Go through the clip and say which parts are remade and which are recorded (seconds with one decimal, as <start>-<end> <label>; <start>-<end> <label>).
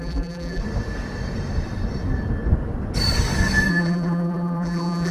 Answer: 0.0-0.6 remade; 0.6-3.7 recorded; 3.7-5.1 remade